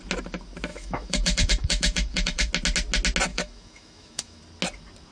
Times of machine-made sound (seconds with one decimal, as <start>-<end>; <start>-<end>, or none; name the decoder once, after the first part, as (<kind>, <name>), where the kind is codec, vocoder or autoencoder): 0.7-2.5 (autoencoder, DAC-VAE); 3.3-4.4